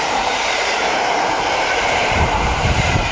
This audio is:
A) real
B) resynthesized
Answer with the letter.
B